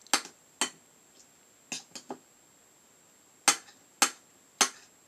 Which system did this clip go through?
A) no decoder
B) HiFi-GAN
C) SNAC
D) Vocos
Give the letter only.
A